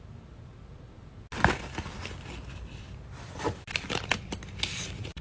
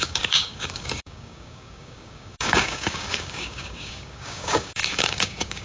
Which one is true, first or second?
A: first